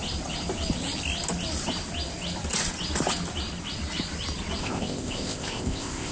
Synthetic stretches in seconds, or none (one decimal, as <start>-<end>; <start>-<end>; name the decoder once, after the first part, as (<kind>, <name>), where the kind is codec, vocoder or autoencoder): 4.6-6.1 (codec, ZipCodec)